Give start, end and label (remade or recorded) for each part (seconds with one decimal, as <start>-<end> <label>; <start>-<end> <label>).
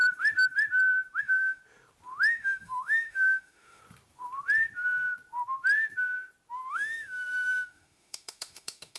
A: 0.0-1.2 recorded; 1.2-1.6 remade; 1.6-2.3 recorded; 2.3-3.8 remade; 3.8-6.7 recorded; 6.7-9.0 remade